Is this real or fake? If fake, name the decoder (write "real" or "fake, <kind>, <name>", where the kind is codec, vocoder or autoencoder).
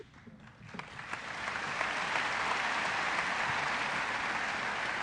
real